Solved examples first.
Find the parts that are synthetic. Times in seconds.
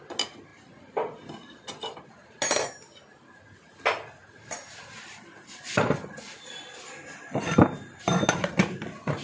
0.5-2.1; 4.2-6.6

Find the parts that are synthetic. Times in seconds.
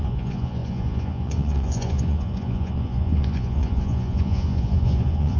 0.0-5.4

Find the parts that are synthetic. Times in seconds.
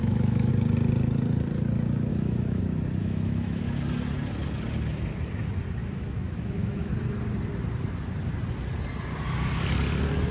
0.0-0.5; 2.1-2.6; 3.0-3.6; 5.8-6.9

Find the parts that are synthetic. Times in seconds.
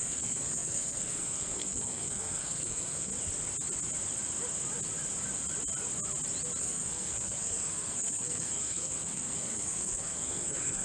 0.0-3.1; 6.6-10.8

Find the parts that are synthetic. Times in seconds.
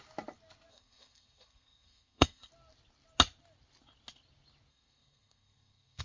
0.7-2.5; 4.7-6.0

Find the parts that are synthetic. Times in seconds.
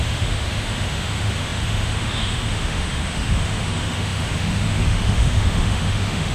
0.0-6.3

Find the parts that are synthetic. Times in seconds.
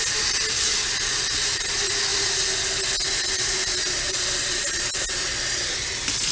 none